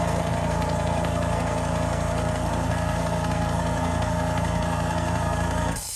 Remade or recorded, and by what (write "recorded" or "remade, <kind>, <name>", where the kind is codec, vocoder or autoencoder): remade, codec, SNAC